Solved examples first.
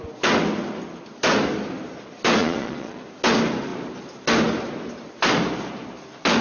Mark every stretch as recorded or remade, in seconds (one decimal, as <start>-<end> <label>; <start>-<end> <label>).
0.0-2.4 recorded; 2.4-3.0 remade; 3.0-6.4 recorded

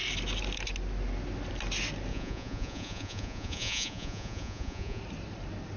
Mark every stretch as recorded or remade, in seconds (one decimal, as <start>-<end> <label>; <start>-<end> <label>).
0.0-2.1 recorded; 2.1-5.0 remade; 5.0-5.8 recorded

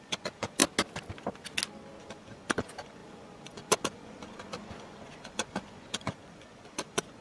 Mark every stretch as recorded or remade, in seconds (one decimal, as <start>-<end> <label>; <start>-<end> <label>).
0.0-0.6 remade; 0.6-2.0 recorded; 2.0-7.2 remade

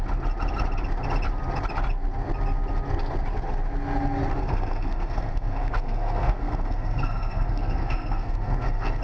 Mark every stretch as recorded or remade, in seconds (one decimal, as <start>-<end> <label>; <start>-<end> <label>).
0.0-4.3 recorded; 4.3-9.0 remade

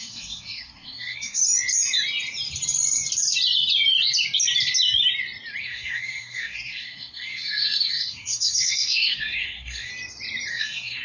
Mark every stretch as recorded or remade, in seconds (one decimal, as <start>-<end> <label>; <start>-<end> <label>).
0.0-1.4 remade; 1.4-5.6 recorded; 5.6-9.9 remade; 9.9-10.5 recorded; 10.5-11.0 remade

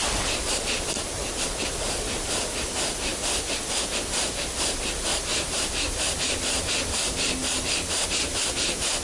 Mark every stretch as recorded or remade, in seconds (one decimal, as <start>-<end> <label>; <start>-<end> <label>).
0.0-5.3 recorded; 5.3-6.4 remade; 6.4-9.0 recorded

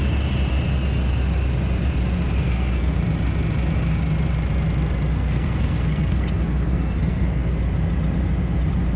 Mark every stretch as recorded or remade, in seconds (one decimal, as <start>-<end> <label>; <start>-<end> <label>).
0.0-2.4 recorded; 2.4-3.0 remade; 3.0-5.1 recorded; 5.1-7.6 remade; 7.6-9.0 recorded